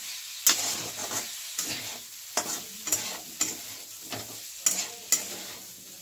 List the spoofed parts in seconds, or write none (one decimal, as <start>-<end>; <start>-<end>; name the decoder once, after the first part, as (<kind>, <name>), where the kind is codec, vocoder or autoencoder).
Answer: 1.0-4.5 (vocoder, BigVGAN v2)